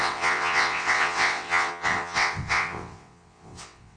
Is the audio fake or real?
fake